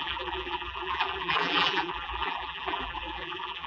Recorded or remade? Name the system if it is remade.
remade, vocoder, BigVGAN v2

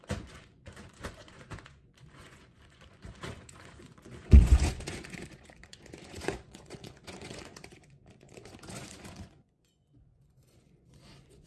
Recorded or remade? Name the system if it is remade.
remade, vocoder, Vocos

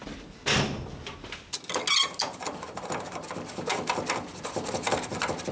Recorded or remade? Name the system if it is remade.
recorded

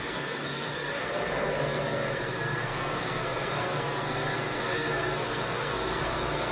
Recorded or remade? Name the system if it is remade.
remade, codec, SNAC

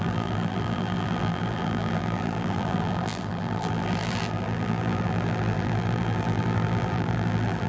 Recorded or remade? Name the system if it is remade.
remade, vocoder, BigVGAN v2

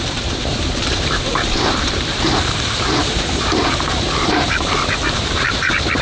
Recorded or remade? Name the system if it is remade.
remade, vocoder, BigVGAN v2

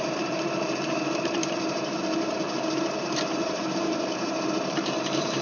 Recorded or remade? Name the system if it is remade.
remade, vocoder, BigVGAN v2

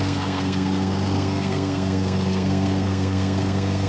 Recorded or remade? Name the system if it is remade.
remade, codec, SNAC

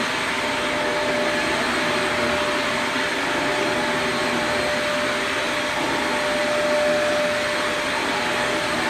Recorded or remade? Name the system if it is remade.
recorded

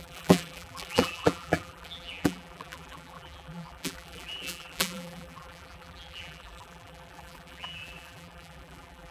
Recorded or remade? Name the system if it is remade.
remade, vocoder, BigVGAN v2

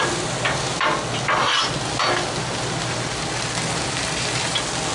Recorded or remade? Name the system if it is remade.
recorded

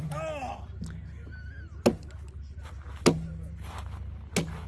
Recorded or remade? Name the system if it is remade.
recorded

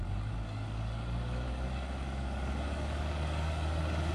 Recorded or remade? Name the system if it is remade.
remade, codec, DAC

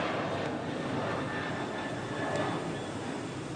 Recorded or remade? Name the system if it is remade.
recorded